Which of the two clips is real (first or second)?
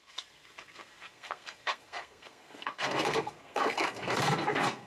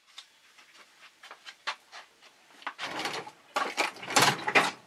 second